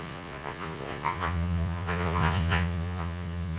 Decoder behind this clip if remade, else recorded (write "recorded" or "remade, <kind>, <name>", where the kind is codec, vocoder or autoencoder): remade, vocoder, Vocos